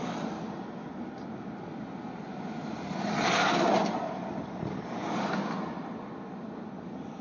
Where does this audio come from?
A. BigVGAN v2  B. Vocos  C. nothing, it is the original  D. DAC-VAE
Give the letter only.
C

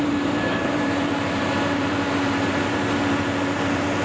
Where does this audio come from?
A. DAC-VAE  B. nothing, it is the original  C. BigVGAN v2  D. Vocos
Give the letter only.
C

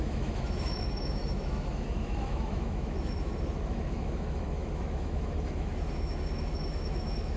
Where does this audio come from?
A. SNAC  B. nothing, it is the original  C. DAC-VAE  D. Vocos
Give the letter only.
C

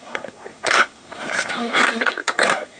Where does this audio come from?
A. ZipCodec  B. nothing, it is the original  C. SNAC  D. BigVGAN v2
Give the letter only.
C